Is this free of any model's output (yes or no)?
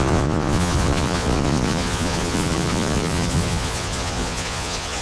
no